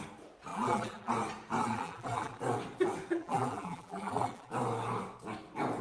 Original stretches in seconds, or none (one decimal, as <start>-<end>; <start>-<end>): 0.0-0.5; 1.1-1.6; 2.4-3.1; 4.5-5.8